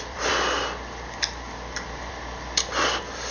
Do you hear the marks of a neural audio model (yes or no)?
yes